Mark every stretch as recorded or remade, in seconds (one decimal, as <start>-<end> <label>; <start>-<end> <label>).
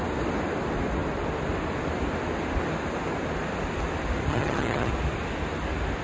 0.0-4.3 recorded; 4.3-4.9 remade; 4.9-6.0 recorded